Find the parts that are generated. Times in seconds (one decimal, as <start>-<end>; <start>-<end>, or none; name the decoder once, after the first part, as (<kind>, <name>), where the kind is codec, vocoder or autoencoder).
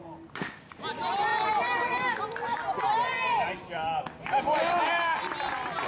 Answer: none